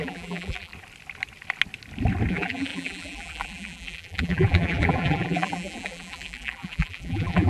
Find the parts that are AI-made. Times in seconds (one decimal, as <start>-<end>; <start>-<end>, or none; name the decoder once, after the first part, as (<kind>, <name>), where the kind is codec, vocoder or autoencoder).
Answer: 0.0-0.7 (vocoder, BigVGAN v2); 2.3-7.5